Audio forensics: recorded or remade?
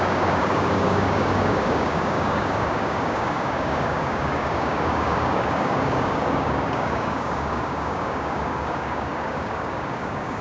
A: remade